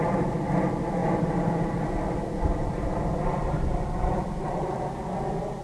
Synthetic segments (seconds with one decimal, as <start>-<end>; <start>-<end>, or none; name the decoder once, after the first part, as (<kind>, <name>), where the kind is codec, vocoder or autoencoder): none